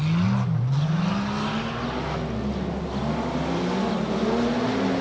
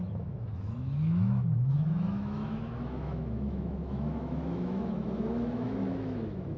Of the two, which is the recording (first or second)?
first